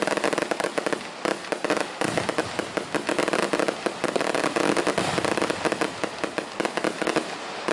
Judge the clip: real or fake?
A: real